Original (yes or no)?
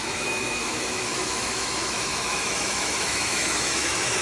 no